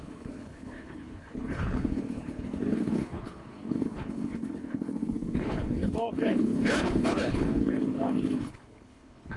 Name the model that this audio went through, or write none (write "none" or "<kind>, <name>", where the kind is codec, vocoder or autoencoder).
codec, HILCodec